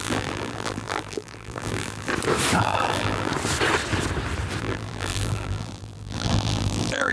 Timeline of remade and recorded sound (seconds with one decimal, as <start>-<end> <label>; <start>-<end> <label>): 0.0-2.1 remade; 2.1-2.6 recorded; 2.6-3.3 remade; 3.3-4.6 recorded; 4.6-7.1 remade